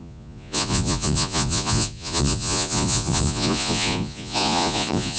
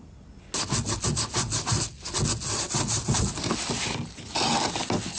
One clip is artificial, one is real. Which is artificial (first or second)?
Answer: first